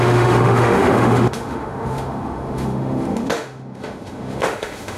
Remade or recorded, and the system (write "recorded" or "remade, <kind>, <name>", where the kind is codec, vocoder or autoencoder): remade, autoencoder, DAC-VAE